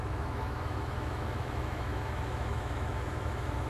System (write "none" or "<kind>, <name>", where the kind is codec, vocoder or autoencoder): autoencoder, DAC-VAE